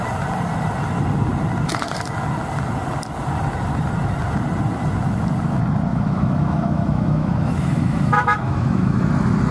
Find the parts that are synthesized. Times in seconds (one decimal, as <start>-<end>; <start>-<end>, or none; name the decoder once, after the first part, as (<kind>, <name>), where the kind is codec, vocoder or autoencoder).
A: 5.9-9.0 (autoencoder, DAC-VAE)